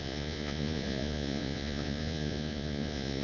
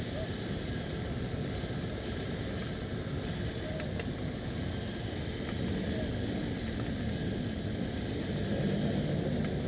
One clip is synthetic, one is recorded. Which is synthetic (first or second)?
first